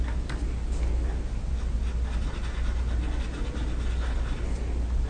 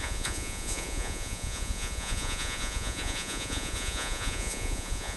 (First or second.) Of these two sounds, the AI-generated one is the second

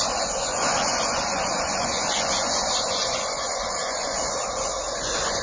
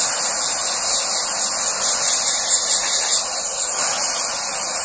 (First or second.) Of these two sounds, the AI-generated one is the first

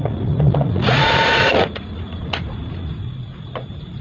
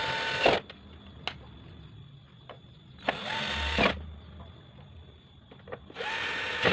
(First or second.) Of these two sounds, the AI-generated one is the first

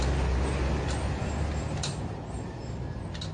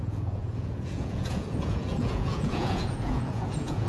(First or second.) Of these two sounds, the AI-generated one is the second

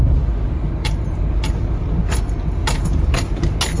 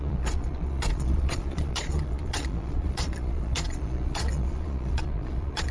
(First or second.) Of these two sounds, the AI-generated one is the second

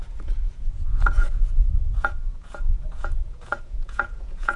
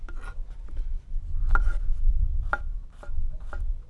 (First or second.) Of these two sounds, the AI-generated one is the first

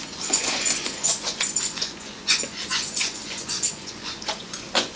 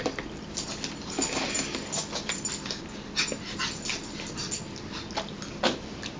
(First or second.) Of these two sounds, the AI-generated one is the first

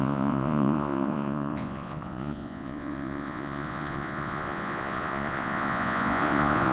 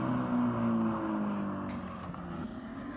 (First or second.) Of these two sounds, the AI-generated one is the first